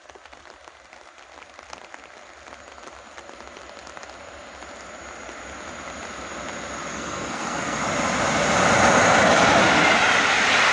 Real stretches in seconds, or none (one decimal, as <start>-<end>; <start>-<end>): 0.0-6.9; 7.8-10.7